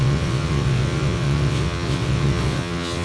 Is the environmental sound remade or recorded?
remade